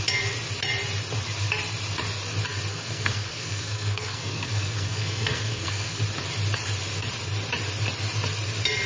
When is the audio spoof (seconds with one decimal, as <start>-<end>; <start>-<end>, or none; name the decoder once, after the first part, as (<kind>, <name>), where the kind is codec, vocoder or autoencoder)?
2.7-6.0 (codec, SNAC)